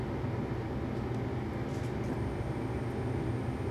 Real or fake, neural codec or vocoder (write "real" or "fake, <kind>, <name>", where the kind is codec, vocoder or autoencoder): real